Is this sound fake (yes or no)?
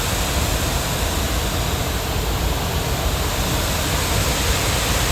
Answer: no